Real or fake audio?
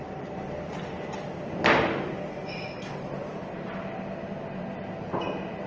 real